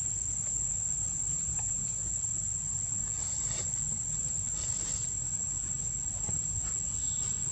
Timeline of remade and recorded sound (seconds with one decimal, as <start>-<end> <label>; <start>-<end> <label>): 0.0-7.5 recorded